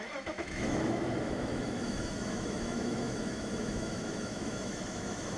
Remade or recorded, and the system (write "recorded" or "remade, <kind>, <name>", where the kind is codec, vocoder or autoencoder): remade, autoencoder, DAC-VAE